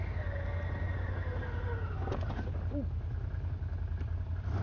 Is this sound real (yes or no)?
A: yes